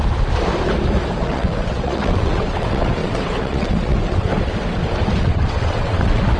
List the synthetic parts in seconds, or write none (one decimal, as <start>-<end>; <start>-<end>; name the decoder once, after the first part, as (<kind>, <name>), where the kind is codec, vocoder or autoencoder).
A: 1.2-4.3 (vocoder, WaveNeXt); 5.2-6.4